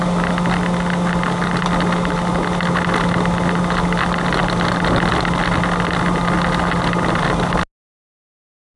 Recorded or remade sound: recorded